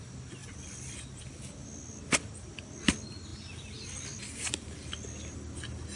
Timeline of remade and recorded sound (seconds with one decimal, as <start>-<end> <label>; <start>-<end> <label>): 0.0-6.0 recorded